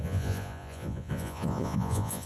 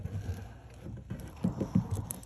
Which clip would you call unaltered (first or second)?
second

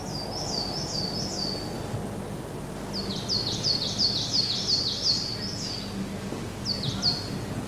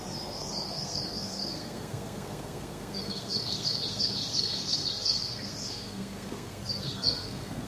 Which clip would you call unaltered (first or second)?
first